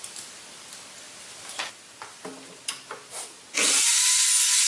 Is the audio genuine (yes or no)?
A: yes